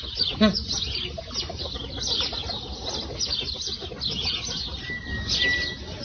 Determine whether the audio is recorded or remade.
recorded